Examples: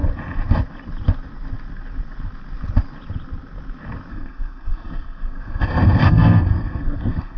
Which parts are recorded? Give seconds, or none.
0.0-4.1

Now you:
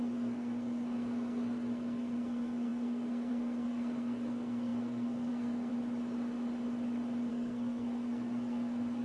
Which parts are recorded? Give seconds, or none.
5.7-7.3